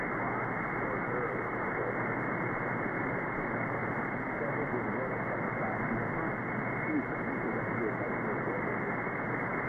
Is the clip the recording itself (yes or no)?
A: yes